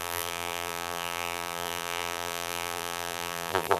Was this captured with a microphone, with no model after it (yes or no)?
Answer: no